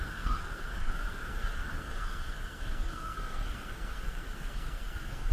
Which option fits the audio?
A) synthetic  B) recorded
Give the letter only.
A